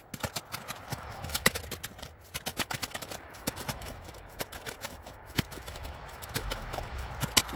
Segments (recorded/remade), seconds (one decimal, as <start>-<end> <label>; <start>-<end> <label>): 0.0-0.9 recorded; 0.9-1.6 remade; 1.6-2.5 recorded; 2.5-7.1 remade; 7.1-7.6 recorded